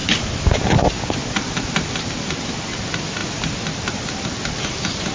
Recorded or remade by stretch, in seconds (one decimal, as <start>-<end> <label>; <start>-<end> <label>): 0.0-3.2 recorded; 3.2-4.2 remade; 4.2-5.1 recorded